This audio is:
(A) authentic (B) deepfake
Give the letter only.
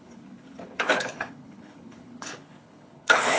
B